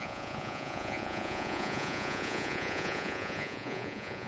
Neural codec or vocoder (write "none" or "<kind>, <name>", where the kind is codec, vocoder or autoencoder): vocoder, Vocos